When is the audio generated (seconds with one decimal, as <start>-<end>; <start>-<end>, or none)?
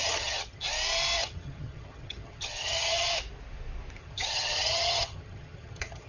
0.0-0.6; 1.2-3.1; 4.0-6.1